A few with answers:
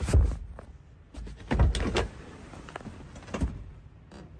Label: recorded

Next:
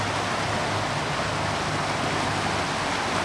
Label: recorded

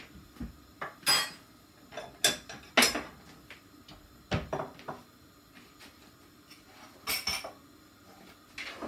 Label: recorded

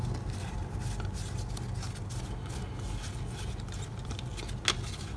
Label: recorded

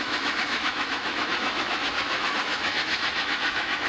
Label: remade